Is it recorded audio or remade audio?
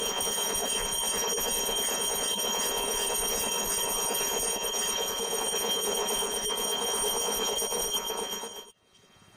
remade